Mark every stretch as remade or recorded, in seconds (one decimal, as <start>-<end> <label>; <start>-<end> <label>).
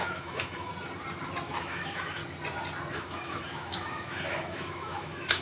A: 0.0-0.7 remade; 0.7-1.5 recorded; 1.5-2.2 remade; 2.2-2.9 recorded; 2.9-5.4 remade